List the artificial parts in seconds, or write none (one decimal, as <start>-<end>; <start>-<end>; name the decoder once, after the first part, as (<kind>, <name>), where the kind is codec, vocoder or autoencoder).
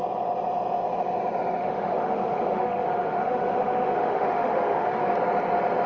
1.6-5.1 (autoencoder, DAC-VAE)